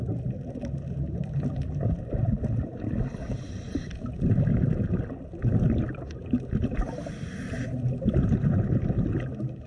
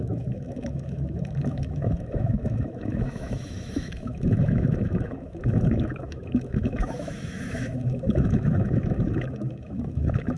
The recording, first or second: first